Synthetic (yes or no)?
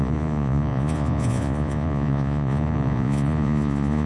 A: yes